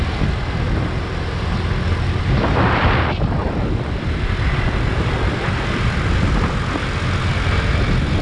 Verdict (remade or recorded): recorded